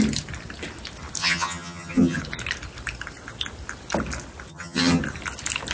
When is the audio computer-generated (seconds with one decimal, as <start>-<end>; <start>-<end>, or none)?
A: 1.2-2.2; 4.5-5.0